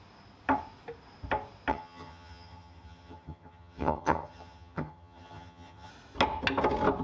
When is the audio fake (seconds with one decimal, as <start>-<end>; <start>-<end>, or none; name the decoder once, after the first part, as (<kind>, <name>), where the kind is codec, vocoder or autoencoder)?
1.7-5.9 (vocoder, HiFi-GAN)